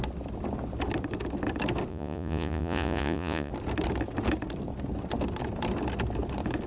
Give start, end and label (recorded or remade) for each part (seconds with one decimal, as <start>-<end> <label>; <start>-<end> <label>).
0.0-1.9 recorded; 1.9-3.5 remade; 3.5-6.7 recorded